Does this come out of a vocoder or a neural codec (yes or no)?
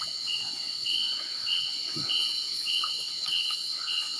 yes